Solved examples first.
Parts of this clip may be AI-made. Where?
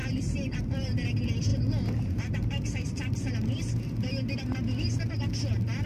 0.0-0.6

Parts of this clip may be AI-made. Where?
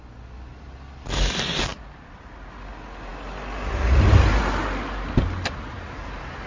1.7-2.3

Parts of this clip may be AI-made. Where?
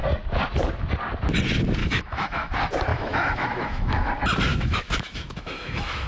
1.8-2.5; 2.9-4.1; 4.5-6.1